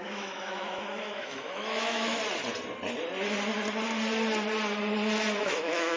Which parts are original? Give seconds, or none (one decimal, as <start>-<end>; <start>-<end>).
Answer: 2.2-5.4